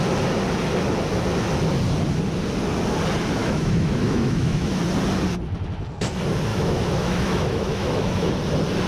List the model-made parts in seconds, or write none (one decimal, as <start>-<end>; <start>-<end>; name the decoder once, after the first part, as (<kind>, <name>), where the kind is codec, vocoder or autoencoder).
3.4-4.8 (autoencoder, DAC-VAE); 6.5-8.3